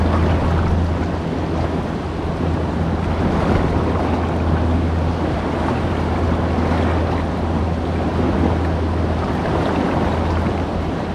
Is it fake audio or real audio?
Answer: real